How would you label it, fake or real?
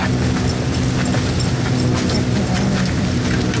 real